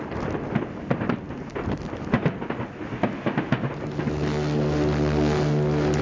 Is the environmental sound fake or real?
real